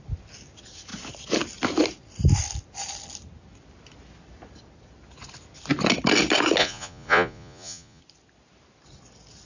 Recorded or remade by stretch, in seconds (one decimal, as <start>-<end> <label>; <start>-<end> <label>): 0.0-6.6 recorded; 6.6-8.0 remade; 8.0-9.5 recorded